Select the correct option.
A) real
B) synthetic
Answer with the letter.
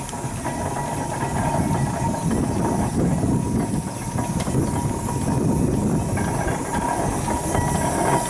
A